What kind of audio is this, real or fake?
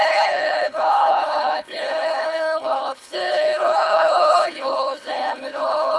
fake